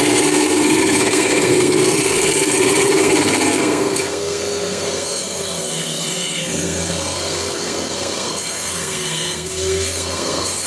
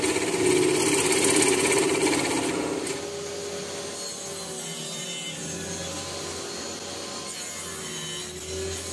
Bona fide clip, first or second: second